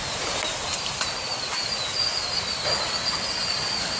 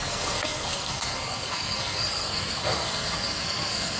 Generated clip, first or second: second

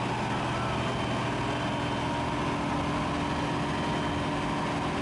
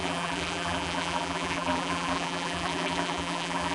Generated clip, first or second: second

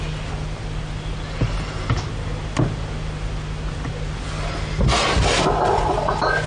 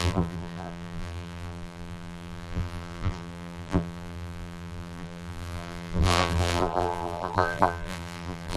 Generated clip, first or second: second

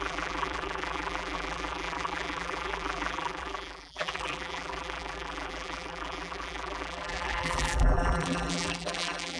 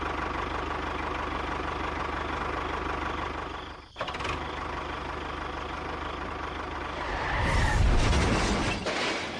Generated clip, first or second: first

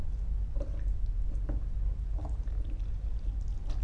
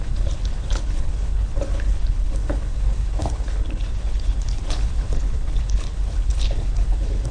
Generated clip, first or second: second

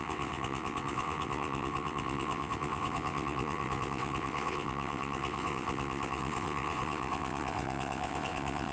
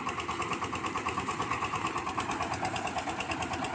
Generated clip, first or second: first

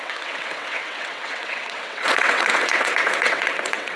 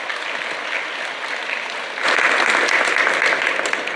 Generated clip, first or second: first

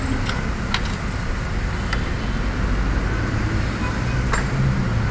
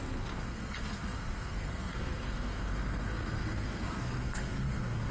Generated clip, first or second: second